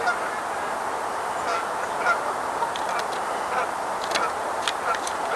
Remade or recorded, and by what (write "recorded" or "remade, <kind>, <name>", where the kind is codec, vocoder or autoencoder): recorded